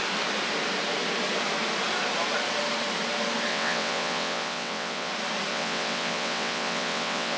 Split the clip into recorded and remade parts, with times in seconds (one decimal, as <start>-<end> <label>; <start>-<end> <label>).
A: 0.0-3.5 recorded; 3.5-5.1 remade; 5.1-5.5 recorded; 5.5-7.4 remade